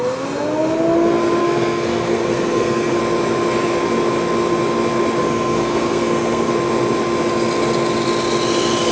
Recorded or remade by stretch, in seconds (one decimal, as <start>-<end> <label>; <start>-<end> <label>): 0.0-1.4 recorded; 1.4-3.0 remade; 3.0-5.2 recorded; 5.2-6.5 remade; 6.5-8.9 recorded